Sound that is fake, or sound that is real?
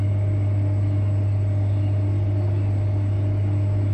real